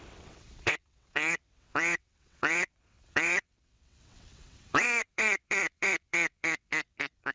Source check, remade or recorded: remade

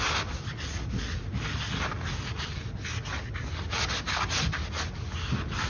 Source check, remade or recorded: recorded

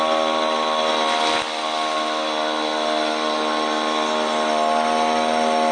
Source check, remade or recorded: recorded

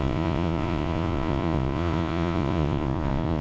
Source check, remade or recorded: remade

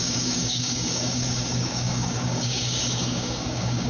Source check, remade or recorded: remade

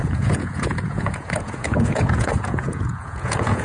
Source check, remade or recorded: remade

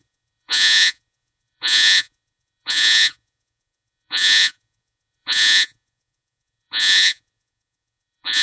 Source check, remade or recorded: remade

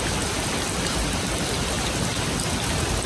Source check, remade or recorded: recorded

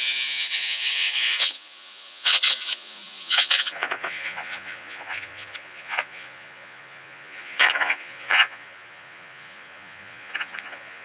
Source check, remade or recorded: remade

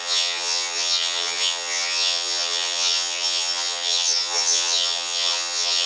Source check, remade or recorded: remade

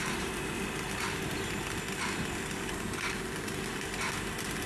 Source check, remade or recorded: recorded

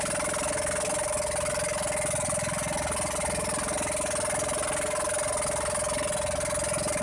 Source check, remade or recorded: recorded